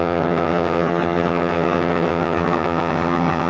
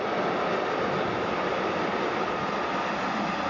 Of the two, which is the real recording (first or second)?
second